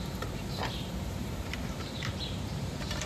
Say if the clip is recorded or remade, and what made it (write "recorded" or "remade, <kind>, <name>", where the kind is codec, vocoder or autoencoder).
remade, vocoder, BigVGAN v2